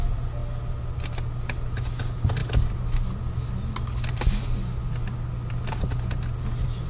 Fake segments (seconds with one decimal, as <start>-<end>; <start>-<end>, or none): none